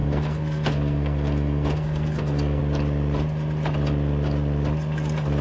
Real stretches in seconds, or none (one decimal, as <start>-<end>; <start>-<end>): 2.6-5.4